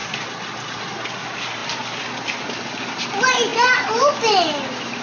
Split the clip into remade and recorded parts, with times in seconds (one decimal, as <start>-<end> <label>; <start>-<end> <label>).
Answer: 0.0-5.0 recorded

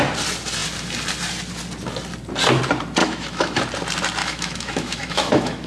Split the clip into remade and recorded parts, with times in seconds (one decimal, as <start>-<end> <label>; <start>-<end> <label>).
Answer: 0.0-3.0 recorded; 3.0-3.6 remade; 3.6-4.2 recorded; 4.2-5.7 remade

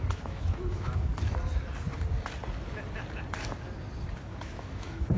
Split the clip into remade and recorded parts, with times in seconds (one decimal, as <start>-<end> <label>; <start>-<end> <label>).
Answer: 0.0-1.1 remade; 1.1-4.2 recorded; 4.2-5.2 remade